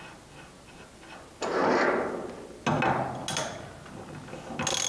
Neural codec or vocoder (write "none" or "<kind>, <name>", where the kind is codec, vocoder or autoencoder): none